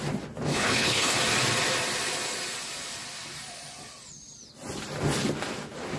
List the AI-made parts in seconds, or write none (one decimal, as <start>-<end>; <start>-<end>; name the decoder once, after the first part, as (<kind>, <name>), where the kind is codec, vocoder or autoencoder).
0.5-1.2 (codec, HILCodec)